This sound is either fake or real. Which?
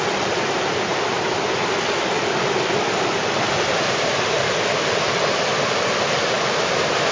real